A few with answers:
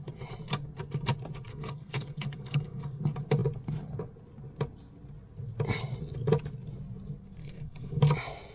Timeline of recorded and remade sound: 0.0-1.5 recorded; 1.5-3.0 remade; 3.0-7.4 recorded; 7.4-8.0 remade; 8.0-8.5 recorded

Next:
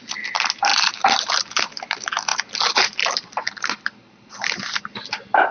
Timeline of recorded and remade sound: 0.0-0.7 recorded; 0.7-1.3 remade; 1.3-5.5 recorded

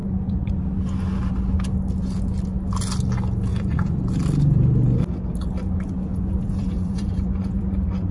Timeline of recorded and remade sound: 0.0-0.5 remade; 0.5-3.5 recorded; 3.5-4.0 remade; 4.0-6.1 recorded; 6.1-8.1 remade

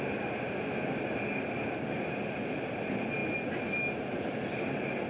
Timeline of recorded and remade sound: 0.0-5.1 recorded

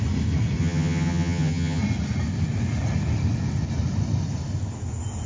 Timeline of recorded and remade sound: 0.0-0.6 recorded; 0.6-1.8 remade; 1.8-5.3 recorded

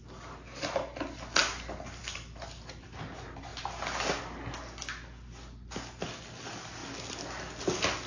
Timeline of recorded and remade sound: 0.0-8.1 recorded

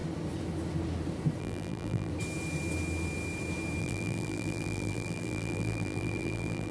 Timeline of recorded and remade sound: 0.0-1.4 recorded; 1.4-2.1 remade; 2.1-3.8 recorded; 3.8-6.7 remade